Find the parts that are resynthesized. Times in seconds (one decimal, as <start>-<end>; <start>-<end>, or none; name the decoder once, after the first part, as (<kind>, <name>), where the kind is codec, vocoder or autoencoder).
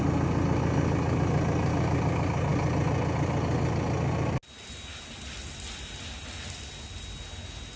none